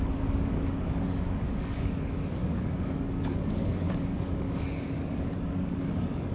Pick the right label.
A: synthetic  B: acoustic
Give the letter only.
A